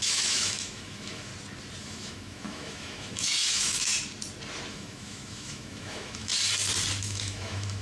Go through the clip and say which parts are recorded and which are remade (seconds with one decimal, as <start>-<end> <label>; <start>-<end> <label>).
0.0-1.3 remade; 1.3-1.8 recorded; 1.8-3.9 remade; 3.9-4.7 recorded; 4.7-6.3 remade; 6.3-7.0 recorded; 7.0-7.8 remade